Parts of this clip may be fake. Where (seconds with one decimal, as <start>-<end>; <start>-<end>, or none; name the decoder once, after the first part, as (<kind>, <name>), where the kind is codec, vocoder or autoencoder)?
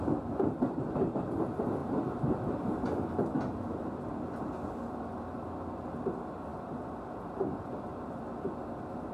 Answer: none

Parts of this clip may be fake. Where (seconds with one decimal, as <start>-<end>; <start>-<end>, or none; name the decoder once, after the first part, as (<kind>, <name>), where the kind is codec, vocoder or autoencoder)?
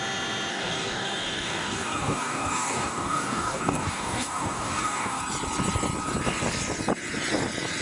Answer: 0.5-5.2 (codec, DAC)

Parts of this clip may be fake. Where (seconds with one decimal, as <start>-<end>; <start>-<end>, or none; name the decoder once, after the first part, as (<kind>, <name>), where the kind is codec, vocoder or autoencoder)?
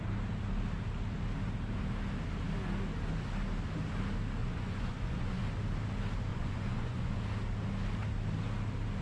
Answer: 4.4-5.4 (vocoder, Vocos); 6.3-7.2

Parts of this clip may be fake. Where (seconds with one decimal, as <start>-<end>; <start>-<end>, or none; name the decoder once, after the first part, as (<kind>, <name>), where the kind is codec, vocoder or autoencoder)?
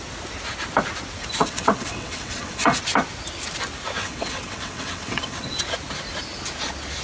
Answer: 1.4-2.8 (vocoder, WaveNeXt); 4.0-5.5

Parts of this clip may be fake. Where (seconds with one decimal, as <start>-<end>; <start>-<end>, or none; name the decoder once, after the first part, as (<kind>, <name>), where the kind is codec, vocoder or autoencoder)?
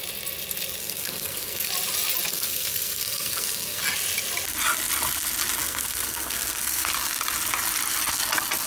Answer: 0.8-1.7 (codec, SNAC); 2.3-3.8; 5.6-6.9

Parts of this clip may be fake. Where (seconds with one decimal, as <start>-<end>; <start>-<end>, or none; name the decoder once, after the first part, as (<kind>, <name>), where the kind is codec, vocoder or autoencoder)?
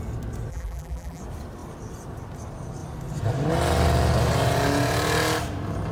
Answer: 0.5-1.2 (vocoder, BigVGAN v2)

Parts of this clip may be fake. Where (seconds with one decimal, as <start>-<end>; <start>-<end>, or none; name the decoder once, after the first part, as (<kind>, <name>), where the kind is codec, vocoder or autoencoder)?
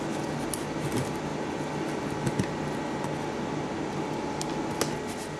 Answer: none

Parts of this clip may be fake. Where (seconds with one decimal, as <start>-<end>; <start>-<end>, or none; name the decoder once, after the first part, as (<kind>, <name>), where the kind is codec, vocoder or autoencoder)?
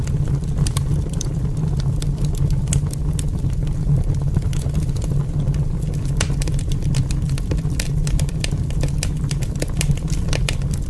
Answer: none